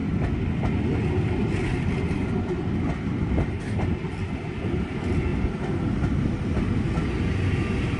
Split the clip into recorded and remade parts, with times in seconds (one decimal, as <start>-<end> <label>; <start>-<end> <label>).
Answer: 0.0-8.0 recorded